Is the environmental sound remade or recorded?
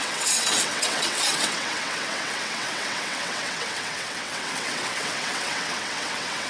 remade